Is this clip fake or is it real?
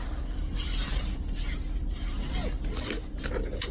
real